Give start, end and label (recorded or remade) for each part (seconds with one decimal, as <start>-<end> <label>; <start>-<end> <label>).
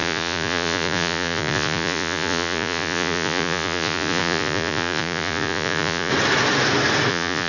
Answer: 0.0-6.1 remade; 6.1-7.1 recorded; 7.1-7.5 remade